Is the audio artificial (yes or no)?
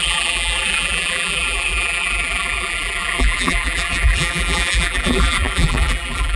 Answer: yes